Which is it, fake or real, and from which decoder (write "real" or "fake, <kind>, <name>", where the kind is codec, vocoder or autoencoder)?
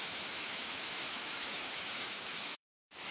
fake, autoencoder, DAC-VAE